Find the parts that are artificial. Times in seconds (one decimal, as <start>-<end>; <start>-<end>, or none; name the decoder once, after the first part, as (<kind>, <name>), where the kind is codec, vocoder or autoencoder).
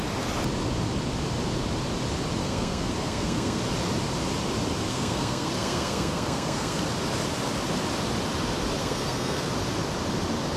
2.4-3.6 (codec, SNAC); 4.9-6.8; 8.8-9.5